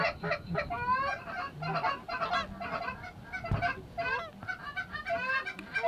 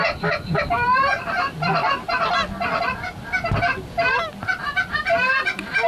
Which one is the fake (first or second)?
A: second